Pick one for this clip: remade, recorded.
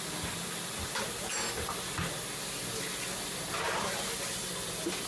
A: recorded